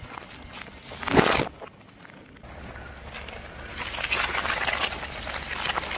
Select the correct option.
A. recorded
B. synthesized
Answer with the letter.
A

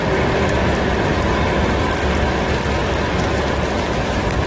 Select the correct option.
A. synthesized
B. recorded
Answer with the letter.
B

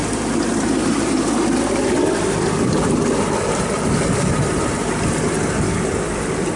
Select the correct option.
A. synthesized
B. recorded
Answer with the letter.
B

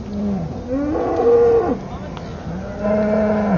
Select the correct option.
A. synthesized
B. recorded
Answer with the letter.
B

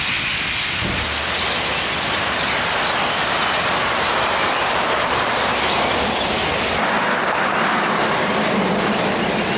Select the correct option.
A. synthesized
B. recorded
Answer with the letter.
B